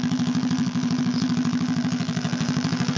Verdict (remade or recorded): remade